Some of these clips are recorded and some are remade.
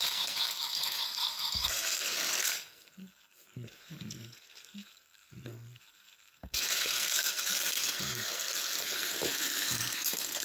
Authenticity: remade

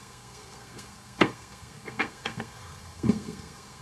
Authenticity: remade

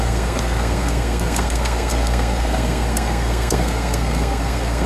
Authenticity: remade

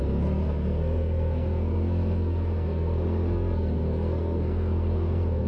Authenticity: remade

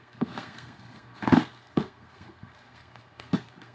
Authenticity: remade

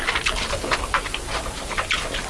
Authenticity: recorded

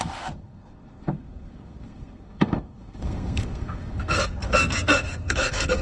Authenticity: remade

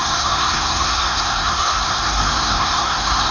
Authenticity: remade